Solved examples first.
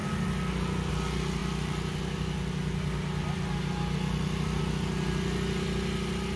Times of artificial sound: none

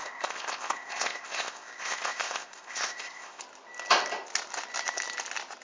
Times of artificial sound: 0.0-3.4 (codec, ZipCodec)

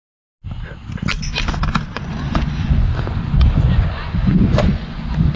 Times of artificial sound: 1.9-5.4 (vocoder, Vocos)

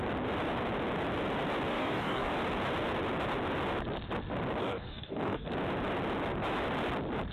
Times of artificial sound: 1.7-2.3 (codec, DAC); 4.6-5.5

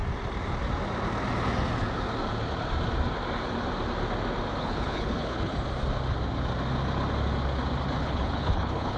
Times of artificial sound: 4.6-5.5 (codec, HILCodec); 8.0-9.0